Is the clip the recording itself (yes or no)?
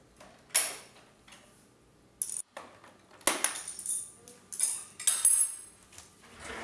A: yes